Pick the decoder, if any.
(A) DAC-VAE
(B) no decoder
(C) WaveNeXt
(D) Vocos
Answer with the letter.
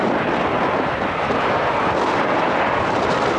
B